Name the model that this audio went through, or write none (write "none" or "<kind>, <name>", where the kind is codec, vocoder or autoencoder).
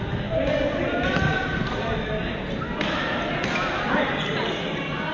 none